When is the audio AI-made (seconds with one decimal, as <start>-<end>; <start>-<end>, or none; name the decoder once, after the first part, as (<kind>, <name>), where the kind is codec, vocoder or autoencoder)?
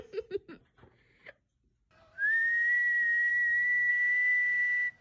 3.3-3.9 (autoencoder, DAC-VAE)